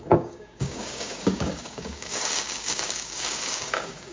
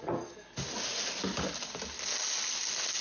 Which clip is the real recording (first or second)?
second